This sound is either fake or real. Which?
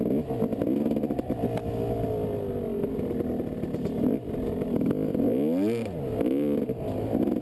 real